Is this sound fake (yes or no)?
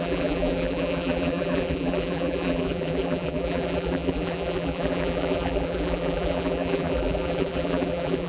yes